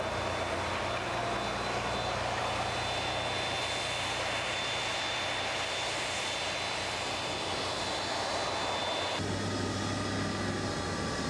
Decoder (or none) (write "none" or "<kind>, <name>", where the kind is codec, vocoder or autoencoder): none